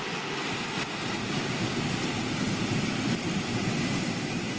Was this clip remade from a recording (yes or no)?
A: no